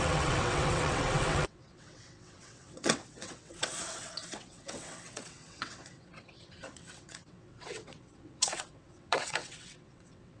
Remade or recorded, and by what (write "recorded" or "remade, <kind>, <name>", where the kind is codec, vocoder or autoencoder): remade, vocoder, WaveNeXt